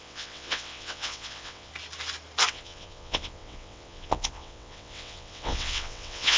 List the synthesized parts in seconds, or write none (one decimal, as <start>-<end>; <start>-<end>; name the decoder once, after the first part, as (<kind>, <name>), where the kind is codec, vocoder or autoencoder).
0.0-1.7 (vocoder, WaveNeXt); 2.5-6.4